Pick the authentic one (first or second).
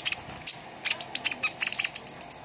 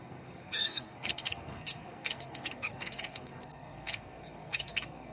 first